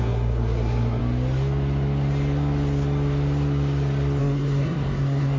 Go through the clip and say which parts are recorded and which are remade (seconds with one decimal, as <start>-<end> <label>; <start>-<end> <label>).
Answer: 0.0-1.0 remade; 1.0-4.2 recorded; 4.2-5.4 remade